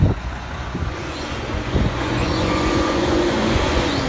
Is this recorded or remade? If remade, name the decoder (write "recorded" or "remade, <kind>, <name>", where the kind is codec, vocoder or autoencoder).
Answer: remade, vocoder, Vocos